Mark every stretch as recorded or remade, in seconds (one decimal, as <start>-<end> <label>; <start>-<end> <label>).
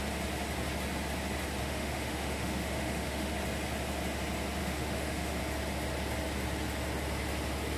0.0-1.6 recorded; 1.6-3.3 remade; 3.3-4.6 recorded; 4.6-5.4 remade; 5.4-7.8 recorded